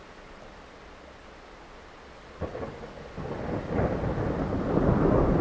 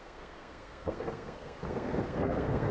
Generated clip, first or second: second